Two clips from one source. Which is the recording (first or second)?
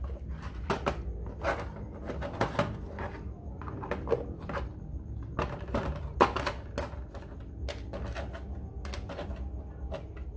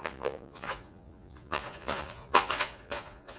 first